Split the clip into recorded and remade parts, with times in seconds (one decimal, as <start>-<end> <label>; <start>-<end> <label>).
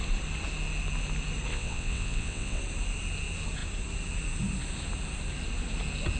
0.0-1.5 recorded; 1.5-2.6 remade; 2.6-6.2 recorded